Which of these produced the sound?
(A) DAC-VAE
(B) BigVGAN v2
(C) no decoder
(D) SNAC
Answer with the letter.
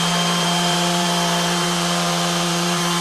B